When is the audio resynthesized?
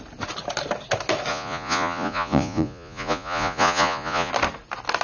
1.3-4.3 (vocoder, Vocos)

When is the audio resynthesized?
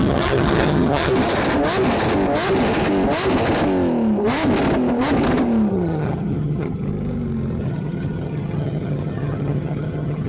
0.0-1.1 (vocoder, HiFi-GAN); 5.7-6.9; 7.6-10.3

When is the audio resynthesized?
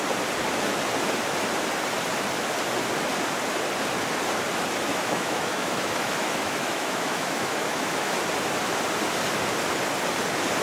4.9-8.2 (autoencoder, DAC-VAE)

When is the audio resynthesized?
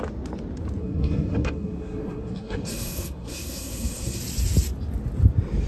0.8-4.2 (codec, SNAC)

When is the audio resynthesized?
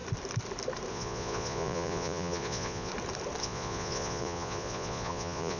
0.9-2.9 (vocoder, Vocos); 3.4-5.6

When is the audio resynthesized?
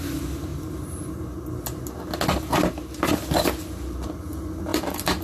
4.7-5.2 (vocoder, BigVGAN v2)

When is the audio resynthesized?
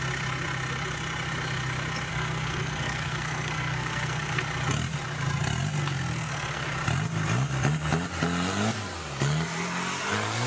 2.1-4.4 (codec, SNAC); 6.1-6.7